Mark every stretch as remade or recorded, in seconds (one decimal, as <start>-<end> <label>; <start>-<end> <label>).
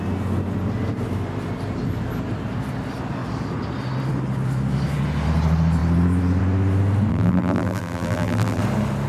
0.0-7.1 recorded; 7.1-8.6 remade; 8.6-9.1 recorded